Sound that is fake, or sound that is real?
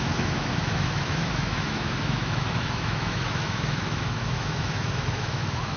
fake